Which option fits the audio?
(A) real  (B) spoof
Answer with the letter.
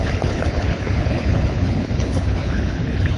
B